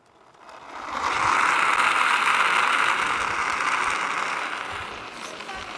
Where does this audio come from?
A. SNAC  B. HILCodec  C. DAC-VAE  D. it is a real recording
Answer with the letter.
D